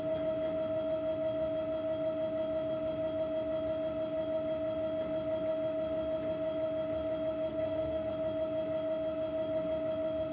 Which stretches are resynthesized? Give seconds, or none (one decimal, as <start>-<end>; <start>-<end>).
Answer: 7.5-8.1